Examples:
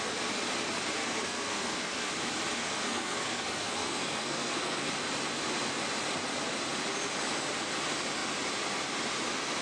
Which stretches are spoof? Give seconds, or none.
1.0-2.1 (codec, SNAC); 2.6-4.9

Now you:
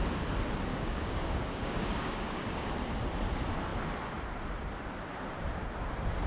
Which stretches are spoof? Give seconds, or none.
0.7-2.7 (codec, DAC)